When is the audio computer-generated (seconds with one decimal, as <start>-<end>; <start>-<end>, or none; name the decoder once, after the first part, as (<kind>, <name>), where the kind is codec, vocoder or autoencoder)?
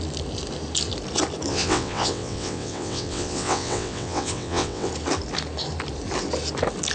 1.5-4.9 (vocoder, WaveNeXt)